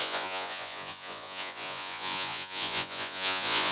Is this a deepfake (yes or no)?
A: yes